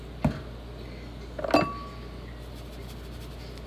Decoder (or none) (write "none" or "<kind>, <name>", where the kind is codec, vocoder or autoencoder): none